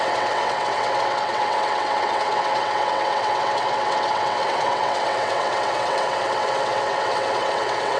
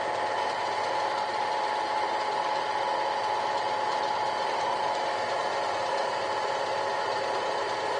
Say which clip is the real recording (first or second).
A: second